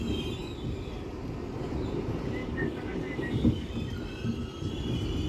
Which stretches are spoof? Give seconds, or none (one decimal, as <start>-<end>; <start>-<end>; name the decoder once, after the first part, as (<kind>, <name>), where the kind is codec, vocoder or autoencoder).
2.4-3.7 (codec, DAC)